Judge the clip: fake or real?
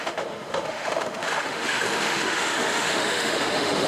fake